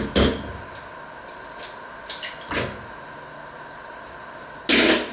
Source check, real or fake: real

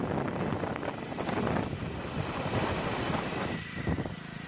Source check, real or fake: real